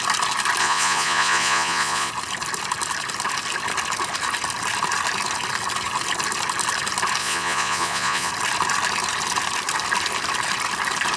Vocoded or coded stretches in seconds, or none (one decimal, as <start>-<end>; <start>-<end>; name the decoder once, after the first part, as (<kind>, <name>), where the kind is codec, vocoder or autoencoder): 0.6-2.1 (vocoder, Vocos); 7.2-8.3